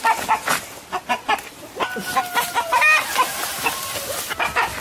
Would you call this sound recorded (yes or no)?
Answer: yes